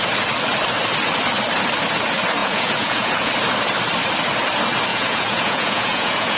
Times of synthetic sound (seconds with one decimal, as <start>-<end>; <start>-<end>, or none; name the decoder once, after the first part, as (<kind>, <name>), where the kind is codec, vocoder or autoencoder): 2.4-3.3 (vocoder, Vocos); 4.9-6.4